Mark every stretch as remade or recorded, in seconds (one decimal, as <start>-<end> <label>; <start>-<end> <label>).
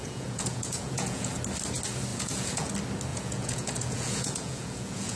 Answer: 0.0-1.3 remade; 1.3-2.1 recorded; 2.1-2.7 remade; 2.7-3.1 recorded; 3.1-5.2 remade